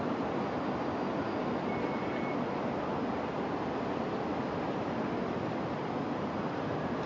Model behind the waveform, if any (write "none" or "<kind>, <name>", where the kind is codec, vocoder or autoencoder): none